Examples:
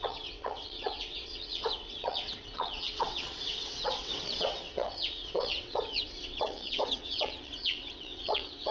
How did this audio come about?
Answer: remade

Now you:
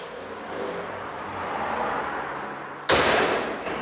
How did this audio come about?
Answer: recorded